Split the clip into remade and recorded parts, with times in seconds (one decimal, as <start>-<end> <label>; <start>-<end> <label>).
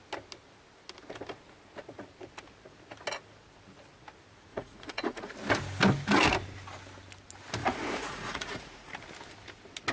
0.0-4.5 recorded; 4.5-5.3 remade; 5.3-7.6 recorded; 7.6-8.9 remade; 8.9-9.9 recorded